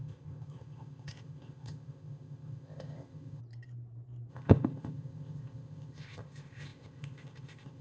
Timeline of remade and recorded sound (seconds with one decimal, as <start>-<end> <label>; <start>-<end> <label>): 0.0-3.4 remade; 3.4-4.3 recorded; 4.3-7.8 remade